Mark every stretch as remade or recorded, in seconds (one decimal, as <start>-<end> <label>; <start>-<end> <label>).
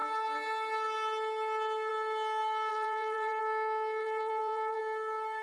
0.0-2.7 recorded; 2.7-3.4 remade; 3.4-4.0 recorded; 4.0-4.8 remade; 4.8-5.4 recorded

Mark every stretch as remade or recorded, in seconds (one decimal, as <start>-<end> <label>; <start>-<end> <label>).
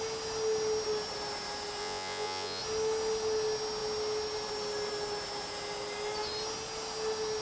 0.0-1.8 recorded; 1.8-2.6 remade; 2.6-7.4 recorded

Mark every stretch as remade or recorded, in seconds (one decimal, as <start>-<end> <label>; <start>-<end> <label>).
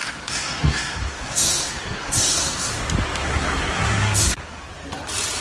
0.0-2.7 remade; 2.7-3.2 recorded; 3.2-4.6 remade; 4.6-5.4 recorded